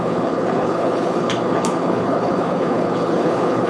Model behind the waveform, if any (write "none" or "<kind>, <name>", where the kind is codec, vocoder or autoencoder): codec, HILCodec